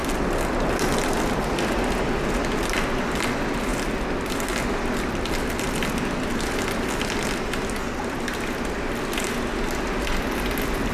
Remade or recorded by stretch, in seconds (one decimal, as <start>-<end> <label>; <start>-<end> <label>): 0.0-3.7 recorded; 3.7-4.3 remade; 4.3-10.9 recorded